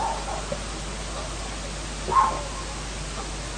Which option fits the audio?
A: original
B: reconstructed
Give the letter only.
A